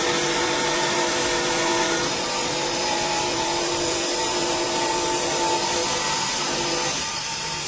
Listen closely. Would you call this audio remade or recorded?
remade